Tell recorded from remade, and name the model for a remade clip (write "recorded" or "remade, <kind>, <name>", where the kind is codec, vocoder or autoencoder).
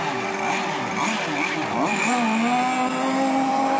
recorded